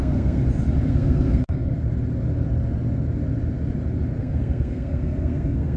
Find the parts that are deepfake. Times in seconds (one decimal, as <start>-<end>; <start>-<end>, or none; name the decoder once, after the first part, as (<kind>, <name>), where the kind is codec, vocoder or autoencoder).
0.0-0.4 (codec, SNAC); 0.9-1.7; 4.2-5.8